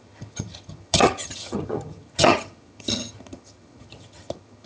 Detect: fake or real fake